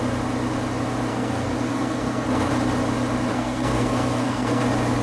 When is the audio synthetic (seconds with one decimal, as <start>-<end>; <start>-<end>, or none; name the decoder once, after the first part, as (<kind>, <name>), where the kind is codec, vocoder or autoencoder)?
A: 1.1-2.5 (codec, SNAC); 3.3-4.6